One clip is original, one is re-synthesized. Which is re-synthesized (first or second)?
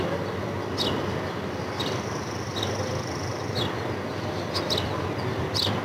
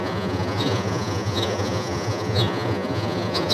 second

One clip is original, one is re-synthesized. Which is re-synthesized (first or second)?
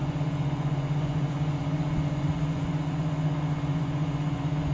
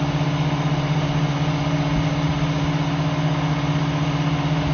first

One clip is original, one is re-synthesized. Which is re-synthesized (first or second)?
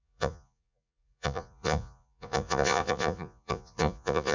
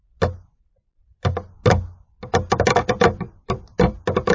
first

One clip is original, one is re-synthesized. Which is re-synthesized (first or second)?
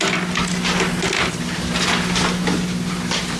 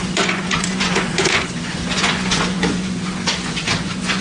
second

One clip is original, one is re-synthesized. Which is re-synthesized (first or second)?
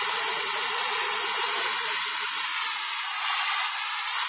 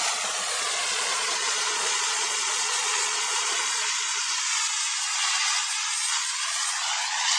second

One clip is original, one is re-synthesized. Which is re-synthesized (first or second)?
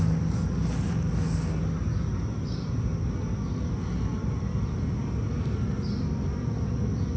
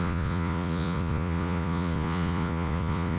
second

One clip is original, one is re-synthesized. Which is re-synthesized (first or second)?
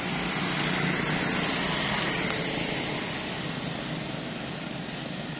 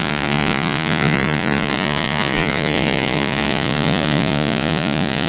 second